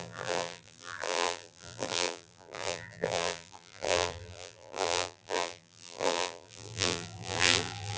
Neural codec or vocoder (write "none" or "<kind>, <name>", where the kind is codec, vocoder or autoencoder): vocoder, BigVGAN v2